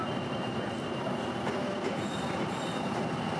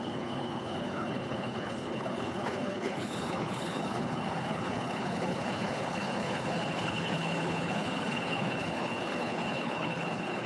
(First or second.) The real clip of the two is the first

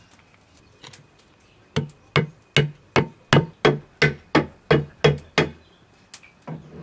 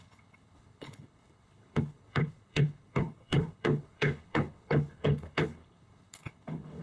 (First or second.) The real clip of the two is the first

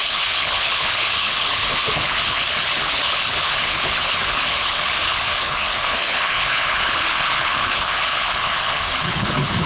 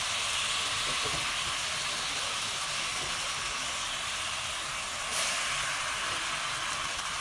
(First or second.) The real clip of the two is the second